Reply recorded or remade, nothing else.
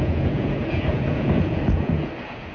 remade